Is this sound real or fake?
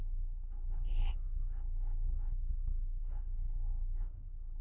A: fake